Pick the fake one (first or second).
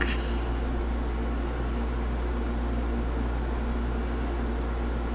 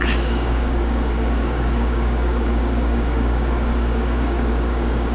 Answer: second